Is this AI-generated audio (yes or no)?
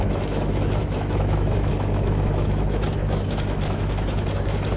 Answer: yes